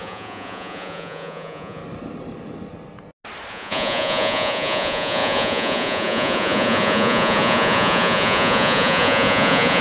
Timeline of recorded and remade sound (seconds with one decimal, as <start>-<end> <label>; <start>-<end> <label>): 0.0-1.8 remade; 1.8-3.5 recorded; 3.5-9.8 remade